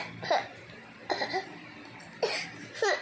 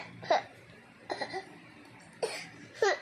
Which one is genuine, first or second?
first